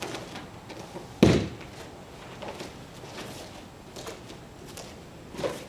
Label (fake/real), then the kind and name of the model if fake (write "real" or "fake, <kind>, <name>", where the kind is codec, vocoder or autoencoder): real